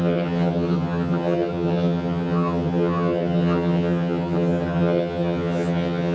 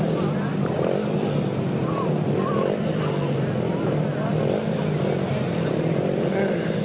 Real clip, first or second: second